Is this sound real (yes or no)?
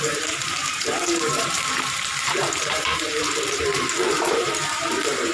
no